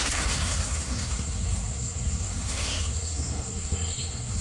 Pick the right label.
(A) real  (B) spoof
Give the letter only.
B